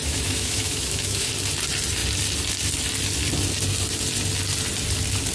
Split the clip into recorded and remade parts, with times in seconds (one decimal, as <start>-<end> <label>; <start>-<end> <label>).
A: 0.0-1.3 remade; 1.3-5.3 recorded